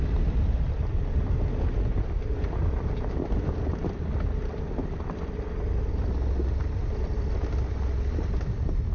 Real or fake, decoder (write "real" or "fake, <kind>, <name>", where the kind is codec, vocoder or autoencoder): real